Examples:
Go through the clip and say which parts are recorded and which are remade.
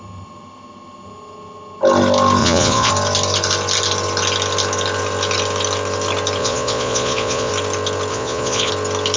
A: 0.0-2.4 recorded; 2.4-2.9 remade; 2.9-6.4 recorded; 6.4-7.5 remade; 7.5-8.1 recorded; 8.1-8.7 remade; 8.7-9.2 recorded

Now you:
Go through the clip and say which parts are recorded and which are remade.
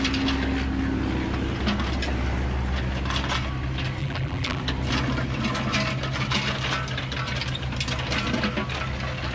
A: 0.0-4.0 recorded; 4.0-4.6 remade; 4.6-9.3 recorded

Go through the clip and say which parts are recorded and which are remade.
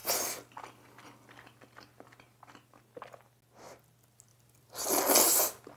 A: 0.0-5.8 recorded